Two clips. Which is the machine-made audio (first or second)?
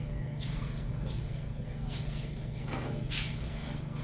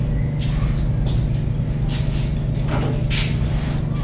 first